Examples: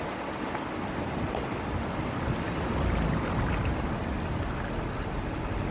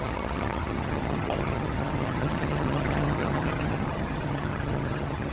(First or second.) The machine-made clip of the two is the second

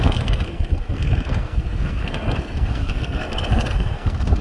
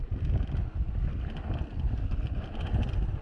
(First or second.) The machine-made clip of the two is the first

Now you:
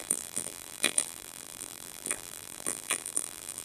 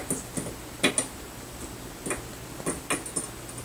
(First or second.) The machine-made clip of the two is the first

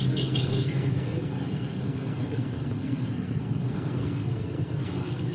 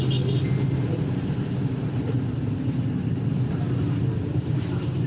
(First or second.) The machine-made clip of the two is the first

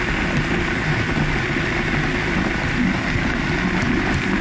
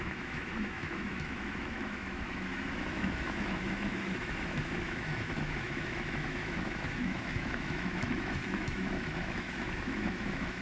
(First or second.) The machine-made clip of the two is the second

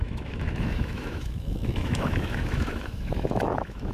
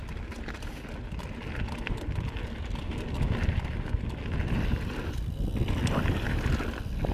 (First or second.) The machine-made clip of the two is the first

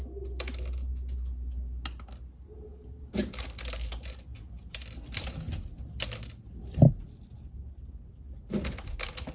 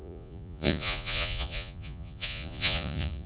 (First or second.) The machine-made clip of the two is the second